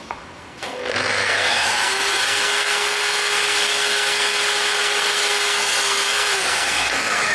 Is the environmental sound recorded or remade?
remade